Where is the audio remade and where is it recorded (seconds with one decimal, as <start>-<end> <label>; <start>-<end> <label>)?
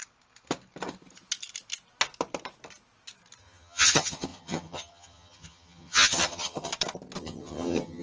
0.0-3.4 recorded; 3.4-6.7 remade; 6.7-7.2 recorded; 7.2-8.0 remade